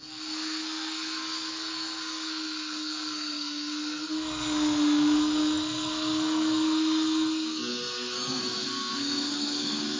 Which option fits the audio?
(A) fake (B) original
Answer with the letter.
A